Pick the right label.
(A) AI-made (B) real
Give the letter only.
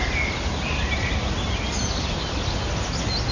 B